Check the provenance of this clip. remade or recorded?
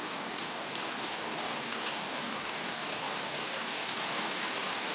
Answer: remade